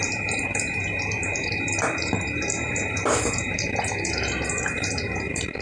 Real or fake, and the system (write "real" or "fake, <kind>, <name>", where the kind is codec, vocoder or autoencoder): fake, vocoder, BigVGAN v2